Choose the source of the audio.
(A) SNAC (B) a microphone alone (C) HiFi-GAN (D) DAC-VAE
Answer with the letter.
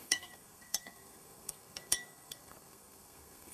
A